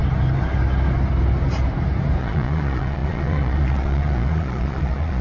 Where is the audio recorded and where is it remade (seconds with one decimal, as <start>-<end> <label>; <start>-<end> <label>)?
0.0-2.2 recorded; 2.2-5.2 remade